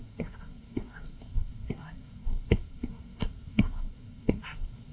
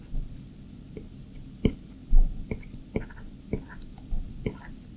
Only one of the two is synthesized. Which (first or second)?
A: first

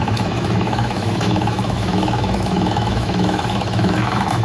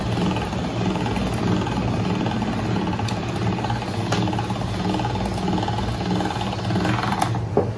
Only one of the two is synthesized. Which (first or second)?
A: first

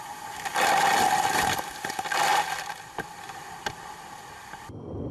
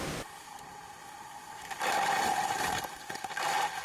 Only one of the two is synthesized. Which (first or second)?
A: second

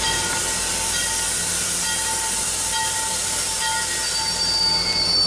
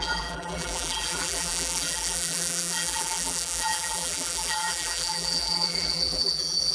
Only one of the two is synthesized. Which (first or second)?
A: second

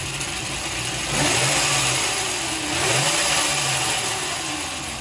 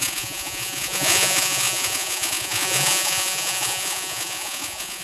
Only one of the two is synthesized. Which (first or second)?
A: second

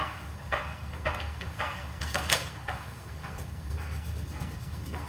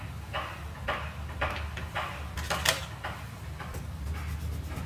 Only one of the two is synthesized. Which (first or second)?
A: first